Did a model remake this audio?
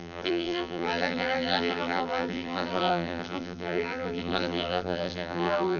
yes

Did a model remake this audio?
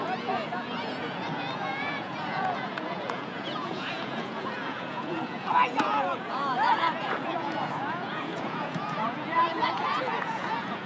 yes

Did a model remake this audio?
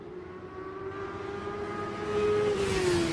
no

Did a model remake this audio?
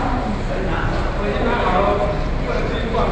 no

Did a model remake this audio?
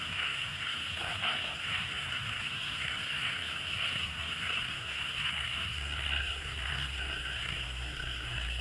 yes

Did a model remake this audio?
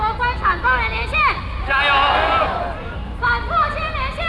no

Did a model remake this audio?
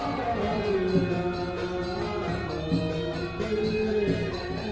no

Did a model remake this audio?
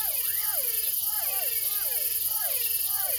no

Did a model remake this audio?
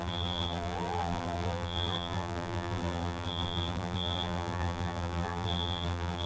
yes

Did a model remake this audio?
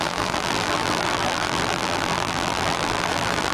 yes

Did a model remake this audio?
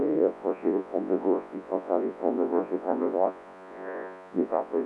yes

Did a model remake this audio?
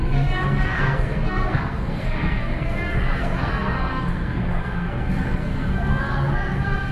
yes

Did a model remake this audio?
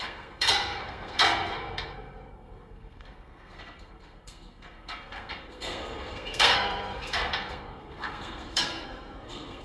yes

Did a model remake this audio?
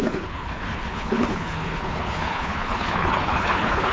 yes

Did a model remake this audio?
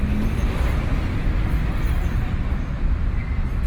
no